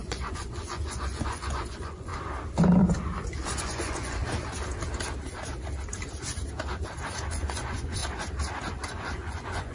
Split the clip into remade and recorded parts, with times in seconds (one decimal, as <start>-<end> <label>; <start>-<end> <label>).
0.0-2.1 remade; 2.1-3.6 recorded; 3.6-4.2 remade; 4.2-7.3 recorded; 7.3-8.0 remade; 8.0-8.9 recorded; 8.9-9.7 remade